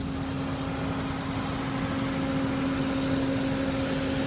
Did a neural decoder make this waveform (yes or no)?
no